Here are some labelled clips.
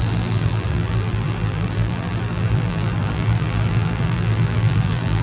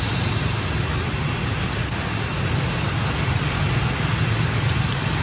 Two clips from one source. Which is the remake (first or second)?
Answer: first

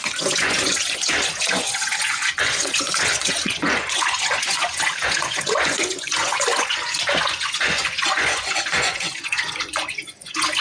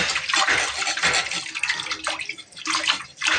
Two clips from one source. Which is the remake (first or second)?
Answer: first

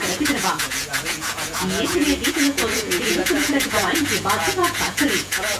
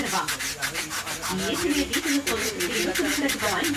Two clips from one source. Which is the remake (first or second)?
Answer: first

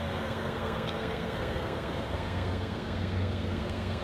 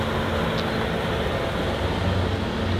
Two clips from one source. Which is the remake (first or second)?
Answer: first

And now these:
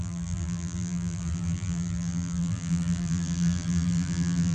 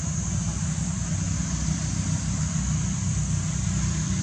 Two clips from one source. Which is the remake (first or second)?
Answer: first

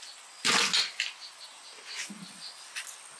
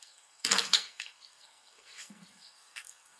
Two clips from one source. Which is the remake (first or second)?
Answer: second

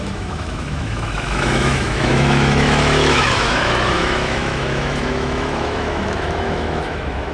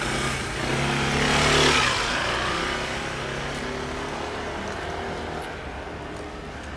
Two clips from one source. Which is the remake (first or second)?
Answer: first